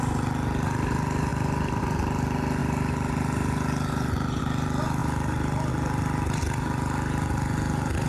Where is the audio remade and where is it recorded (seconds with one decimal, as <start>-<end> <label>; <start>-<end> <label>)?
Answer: 0.0-1.3 recorded; 1.3-1.8 remade; 1.8-5.0 recorded; 5.0-5.7 remade; 5.7-8.1 recorded